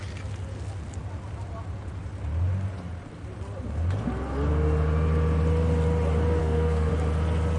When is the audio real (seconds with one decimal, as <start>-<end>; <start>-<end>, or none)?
0.0-6.4; 6.9-7.6